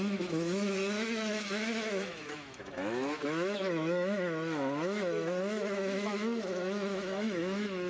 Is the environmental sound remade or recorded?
remade